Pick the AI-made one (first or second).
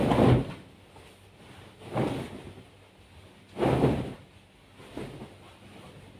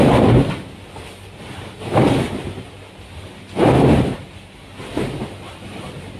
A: second